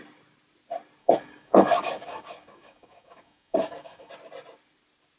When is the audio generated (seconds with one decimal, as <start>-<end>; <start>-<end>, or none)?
1.0-4.1